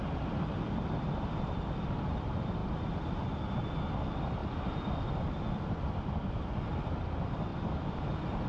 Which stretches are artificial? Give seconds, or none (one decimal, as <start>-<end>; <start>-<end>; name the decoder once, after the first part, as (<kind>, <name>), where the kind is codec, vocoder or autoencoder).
2.6-3.2 (vocoder, BigVGAN v2); 4.4-5.5